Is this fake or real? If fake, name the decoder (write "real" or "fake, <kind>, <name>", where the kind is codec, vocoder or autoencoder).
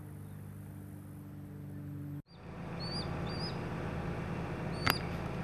real